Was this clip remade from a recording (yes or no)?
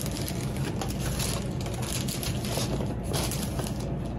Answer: no